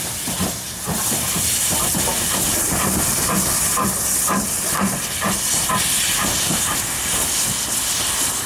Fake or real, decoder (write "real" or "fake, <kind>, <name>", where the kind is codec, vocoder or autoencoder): real